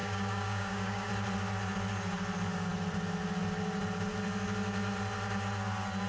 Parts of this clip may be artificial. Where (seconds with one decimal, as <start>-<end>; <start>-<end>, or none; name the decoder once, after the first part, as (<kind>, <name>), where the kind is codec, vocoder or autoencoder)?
0.0-1.1 (codec, DAC)